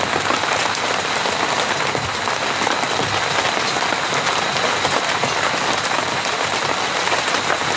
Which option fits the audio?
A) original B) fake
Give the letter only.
A